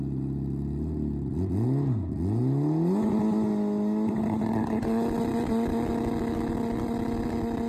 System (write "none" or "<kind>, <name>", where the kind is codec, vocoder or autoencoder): none